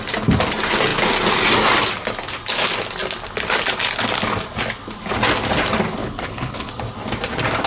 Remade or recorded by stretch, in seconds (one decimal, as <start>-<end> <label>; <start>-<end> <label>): 0.0-6.0 recorded; 6.0-6.7 remade; 6.7-7.7 recorded